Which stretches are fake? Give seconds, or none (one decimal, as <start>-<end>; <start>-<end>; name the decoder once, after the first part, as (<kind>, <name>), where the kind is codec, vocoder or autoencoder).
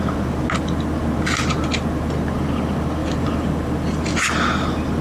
3.0-3.5 (vocoder, BigVGAN v2)